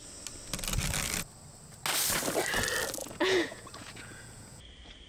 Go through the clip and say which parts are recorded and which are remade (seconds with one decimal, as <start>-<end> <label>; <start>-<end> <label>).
0.0-3.0 recorded; 3.0-4.6 remade; 4.6-5.1 recorded